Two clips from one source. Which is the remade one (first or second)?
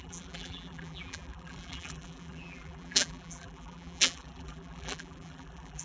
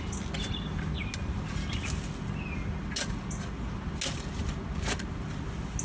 first